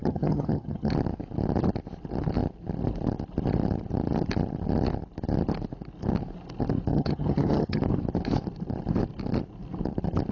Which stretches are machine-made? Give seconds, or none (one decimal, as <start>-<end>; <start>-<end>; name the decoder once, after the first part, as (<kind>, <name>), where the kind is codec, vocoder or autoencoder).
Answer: 0.0-0.9 (vocoder, HiFi-GAN); 6.9-7.8